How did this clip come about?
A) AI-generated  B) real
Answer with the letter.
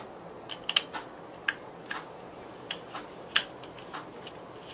B